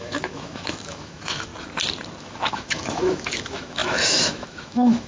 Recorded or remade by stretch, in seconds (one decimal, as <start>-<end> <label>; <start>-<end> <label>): 0.0-1.5 remade; 1.5-2.2 recorded; 2.2-5.1 remade